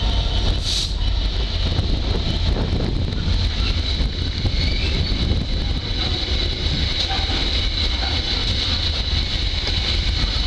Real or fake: real